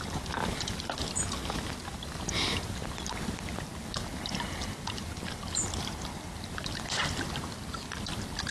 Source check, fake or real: real